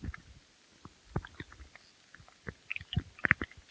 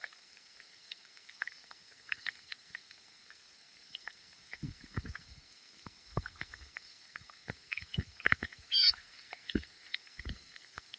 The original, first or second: first